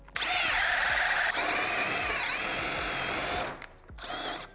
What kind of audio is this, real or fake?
real